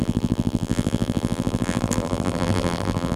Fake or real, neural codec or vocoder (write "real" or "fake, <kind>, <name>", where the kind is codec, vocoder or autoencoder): fake, vocoder, BigVGAN v2